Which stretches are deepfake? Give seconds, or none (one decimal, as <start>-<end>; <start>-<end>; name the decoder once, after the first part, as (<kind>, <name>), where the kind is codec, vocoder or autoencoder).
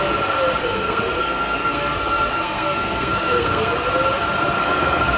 0.6-3.7 (codec, SNAC); 4.6-5.2